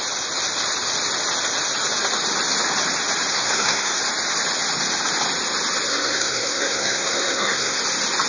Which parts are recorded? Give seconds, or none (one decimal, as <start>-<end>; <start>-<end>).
0.0-3.3; 4.0-5.9; 7.8-8.3